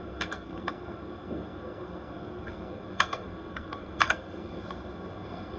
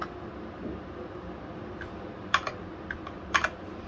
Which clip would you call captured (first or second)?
second